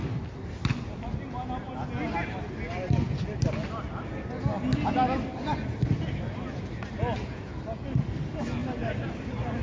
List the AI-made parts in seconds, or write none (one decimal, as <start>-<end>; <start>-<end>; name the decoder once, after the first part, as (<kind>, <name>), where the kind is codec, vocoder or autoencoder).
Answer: none